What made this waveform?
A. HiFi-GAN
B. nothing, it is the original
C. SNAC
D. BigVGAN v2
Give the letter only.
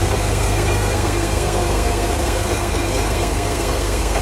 C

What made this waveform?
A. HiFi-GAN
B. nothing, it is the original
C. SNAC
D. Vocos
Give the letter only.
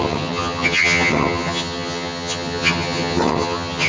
A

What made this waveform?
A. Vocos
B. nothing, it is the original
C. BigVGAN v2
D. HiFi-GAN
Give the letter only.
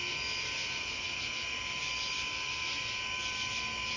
B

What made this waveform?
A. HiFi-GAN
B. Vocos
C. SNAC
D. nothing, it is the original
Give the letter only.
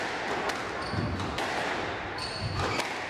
D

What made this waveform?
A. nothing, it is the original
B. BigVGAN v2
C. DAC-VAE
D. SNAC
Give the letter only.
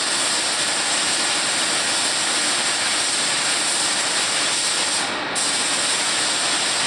A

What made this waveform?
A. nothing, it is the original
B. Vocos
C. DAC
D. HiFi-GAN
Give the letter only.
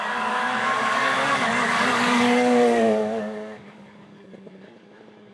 C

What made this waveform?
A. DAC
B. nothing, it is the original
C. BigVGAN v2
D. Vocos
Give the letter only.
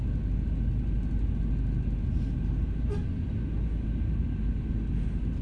B